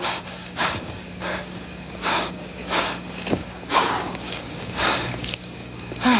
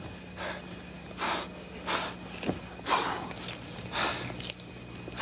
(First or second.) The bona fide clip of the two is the second